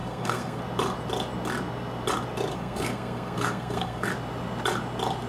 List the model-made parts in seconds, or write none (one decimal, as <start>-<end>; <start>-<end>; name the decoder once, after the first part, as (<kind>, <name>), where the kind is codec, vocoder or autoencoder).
0.0-0.6 (codec, SNAC); 2.5-4.1